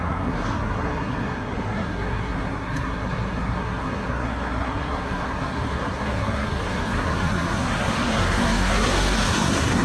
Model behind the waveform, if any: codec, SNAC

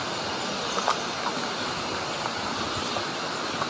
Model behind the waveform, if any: none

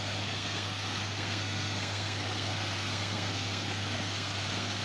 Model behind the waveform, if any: codec, SNAC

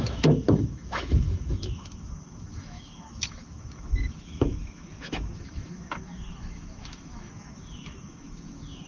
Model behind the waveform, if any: autoencoder, DAC-VAE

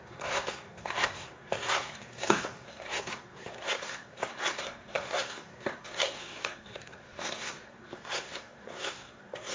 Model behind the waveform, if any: codec, SNAC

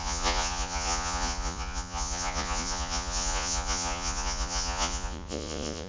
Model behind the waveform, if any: vocoder, Vocos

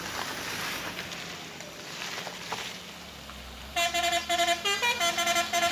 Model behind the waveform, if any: none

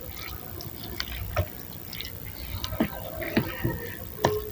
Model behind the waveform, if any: none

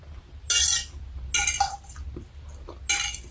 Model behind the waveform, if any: none